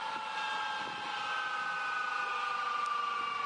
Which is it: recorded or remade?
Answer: recorded